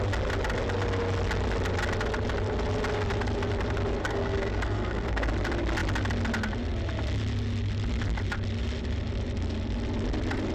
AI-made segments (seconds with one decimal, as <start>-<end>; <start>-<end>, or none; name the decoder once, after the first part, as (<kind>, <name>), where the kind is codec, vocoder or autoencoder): 4.0-5.3 (codec, SNAC)